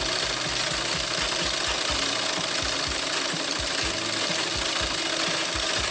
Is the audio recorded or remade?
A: recorded